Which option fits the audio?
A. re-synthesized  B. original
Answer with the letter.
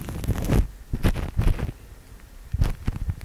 B